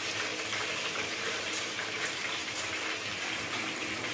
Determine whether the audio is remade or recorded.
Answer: remade